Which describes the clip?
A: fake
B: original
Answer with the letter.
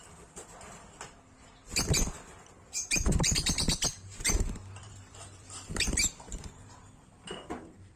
A